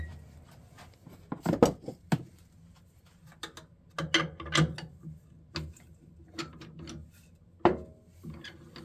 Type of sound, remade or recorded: recorded